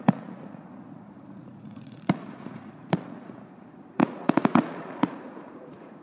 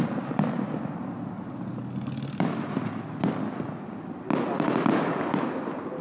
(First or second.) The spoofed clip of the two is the first